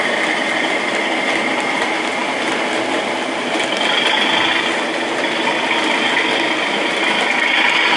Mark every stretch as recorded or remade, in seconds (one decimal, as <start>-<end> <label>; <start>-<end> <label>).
0.0-8.0 recorded